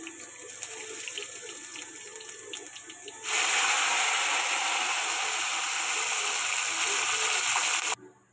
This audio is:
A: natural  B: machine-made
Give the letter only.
A